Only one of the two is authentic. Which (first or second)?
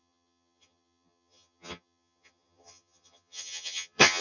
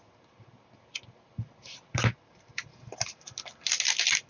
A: second